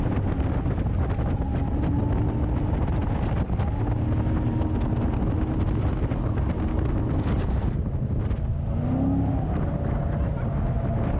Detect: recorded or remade recorded